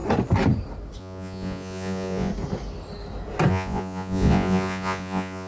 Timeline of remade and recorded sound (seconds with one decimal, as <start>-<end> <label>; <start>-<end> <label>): 0.0-1.0 recorded; 1.0-2.3 remade; 2.3-3.5 recorded; 3.5-5.5 remade